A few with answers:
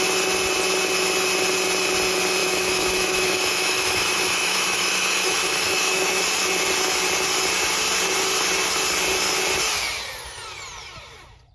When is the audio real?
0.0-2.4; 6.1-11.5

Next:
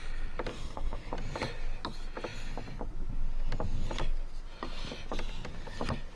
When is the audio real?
0.0-0.5; 1.1-6.2